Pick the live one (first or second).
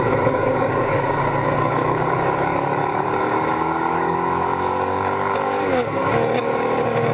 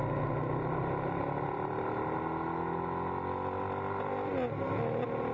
second